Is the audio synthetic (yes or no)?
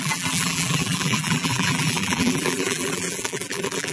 yes